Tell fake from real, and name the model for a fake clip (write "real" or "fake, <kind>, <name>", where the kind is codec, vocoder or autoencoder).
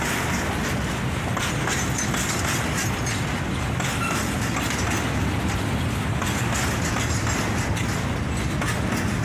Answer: real